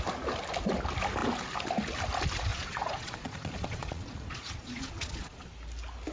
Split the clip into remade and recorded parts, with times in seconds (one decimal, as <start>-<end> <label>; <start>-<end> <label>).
0.0-2.5 recorded; 2.5-5.5 remade; 5.5-6.1 recorded